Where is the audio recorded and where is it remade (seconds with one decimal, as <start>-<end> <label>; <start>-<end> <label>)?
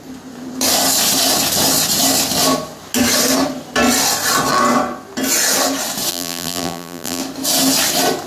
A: 0.0-6.1 recorded; 6.1-7.2 remade; 7.2-8.3 recorded